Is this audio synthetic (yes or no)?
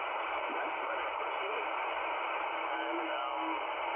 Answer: no